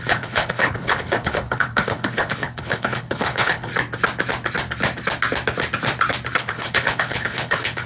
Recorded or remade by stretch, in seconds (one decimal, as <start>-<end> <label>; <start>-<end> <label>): 0.0-3.7 remade; 3.7-6.4 recorded; 6.4-7.9 remade